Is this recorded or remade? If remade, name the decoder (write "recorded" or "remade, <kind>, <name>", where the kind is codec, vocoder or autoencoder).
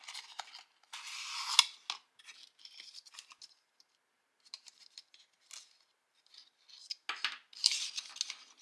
recorded